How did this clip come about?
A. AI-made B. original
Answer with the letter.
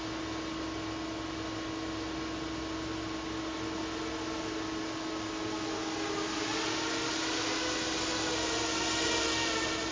B